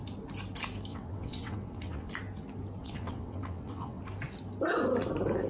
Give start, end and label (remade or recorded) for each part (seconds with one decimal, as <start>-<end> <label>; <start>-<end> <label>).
0.0-0.9 recorded; 0.9-2.1 remade; 2.1-2.8 recorded; 2.8-4.0 remade; 4.0-5.5 recorded